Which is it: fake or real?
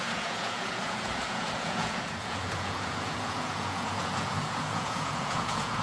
fake